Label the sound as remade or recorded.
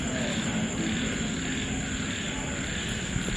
recorded